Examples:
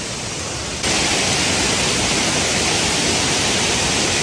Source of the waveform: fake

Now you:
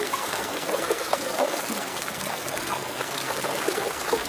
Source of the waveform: fake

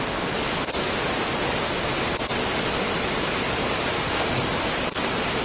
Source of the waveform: real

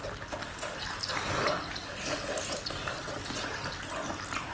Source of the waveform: real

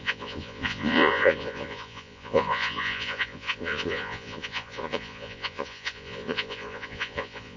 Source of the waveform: fake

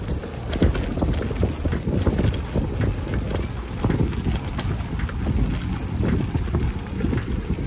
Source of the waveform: real